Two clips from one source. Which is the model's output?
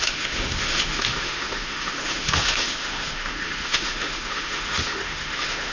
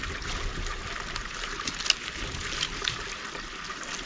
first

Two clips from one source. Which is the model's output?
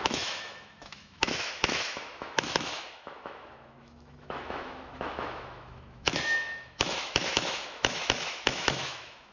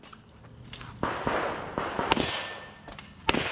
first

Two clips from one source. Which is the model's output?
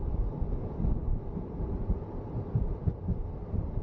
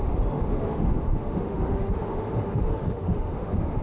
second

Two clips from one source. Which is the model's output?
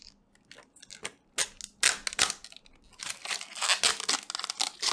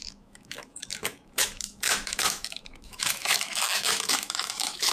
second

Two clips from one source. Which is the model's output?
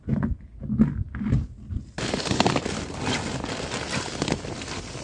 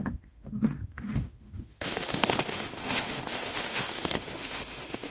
second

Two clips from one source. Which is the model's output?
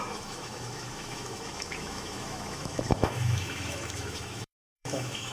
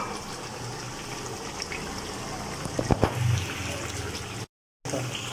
first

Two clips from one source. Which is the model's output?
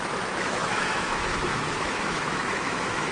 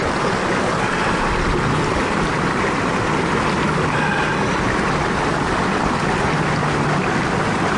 first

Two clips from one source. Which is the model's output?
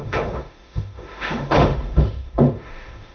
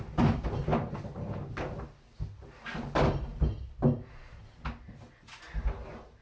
first